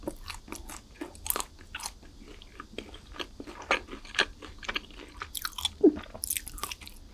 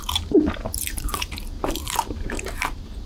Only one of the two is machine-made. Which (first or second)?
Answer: second